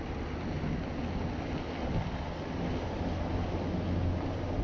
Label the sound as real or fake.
real